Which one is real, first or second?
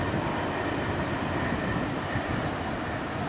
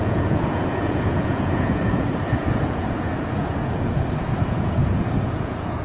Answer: first